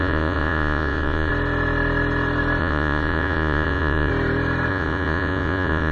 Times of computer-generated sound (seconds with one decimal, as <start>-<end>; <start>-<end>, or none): 0.0-1.3; 2.6-4.1; 4.7-5.9